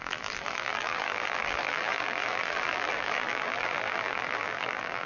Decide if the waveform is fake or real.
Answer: fake